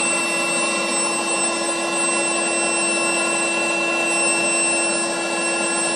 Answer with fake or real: real